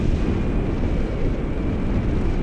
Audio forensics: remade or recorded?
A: recorded